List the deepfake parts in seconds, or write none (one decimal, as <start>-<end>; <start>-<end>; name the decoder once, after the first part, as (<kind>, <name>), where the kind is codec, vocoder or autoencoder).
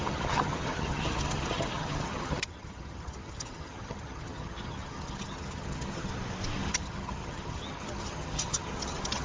0.0-6.1 (vocoder, HiFi-GAN); 6.6-9.2